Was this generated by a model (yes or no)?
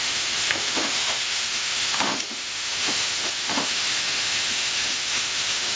yes